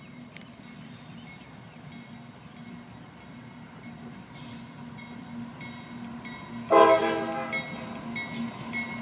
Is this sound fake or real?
real